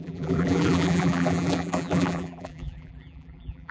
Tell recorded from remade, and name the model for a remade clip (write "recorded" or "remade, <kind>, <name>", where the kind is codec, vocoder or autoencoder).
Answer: remade, vocoder, BigVGAN v2